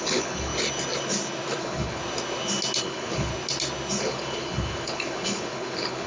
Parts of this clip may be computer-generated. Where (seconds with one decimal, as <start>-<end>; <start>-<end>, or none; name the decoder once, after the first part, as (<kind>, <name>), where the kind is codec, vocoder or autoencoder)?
0.0-0.5 (codec, HILCodec); 1.6-2.0; 2.8-3.3; 4.0-6.1

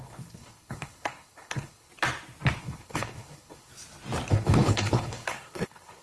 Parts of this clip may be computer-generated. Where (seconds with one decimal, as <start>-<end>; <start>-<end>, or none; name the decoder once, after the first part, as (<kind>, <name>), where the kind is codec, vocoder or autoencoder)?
0.0-1.9 (codec, HILCodec); 2.6-3.7; 4.3-6.0